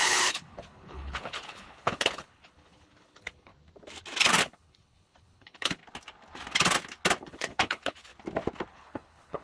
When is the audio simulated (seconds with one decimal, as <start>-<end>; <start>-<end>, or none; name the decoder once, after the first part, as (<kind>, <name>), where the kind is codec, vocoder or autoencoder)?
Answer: 0.0-3.5 (codec, HILCodec); 4.4-5.8; 7.2-8.1; 8.7-9.4

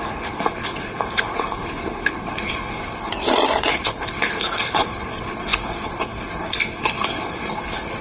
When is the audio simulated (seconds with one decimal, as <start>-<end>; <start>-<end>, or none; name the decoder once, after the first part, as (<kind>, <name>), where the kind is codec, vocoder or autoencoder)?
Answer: 0.0-3.1 (codec, HILCodec); 3.7-8.0

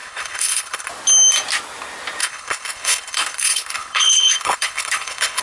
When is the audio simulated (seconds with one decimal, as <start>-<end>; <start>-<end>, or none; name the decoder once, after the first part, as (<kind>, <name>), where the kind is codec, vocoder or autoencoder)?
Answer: 0.0-0.9 (codec, HILCodec); 2.2-5.4

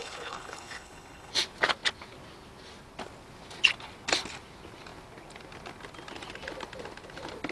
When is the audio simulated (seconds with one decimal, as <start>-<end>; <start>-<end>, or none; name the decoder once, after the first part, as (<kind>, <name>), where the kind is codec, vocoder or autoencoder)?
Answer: 0.0-1.3 (codec, HILCodec)